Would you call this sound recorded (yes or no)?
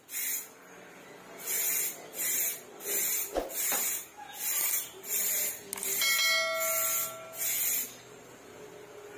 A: yes